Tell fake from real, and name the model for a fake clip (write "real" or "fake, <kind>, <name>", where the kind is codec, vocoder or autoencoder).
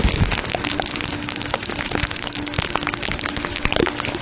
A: real